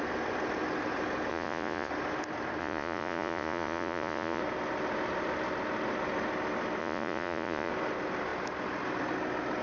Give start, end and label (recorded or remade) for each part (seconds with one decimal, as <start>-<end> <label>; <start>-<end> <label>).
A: 0.0-1.3 recorded; 1.3-1.9 remade; 1.9-2.6 recorded; 2.6-4.4 remade; 4.4-6.8 recorded; 6.8-7.7 remade; 7.7-9.6 recorded